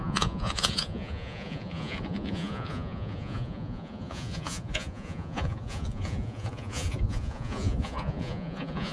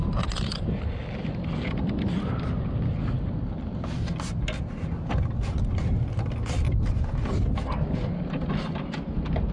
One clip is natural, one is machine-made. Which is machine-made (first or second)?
first